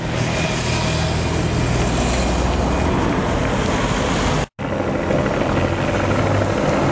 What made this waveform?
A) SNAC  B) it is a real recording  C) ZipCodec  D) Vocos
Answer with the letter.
B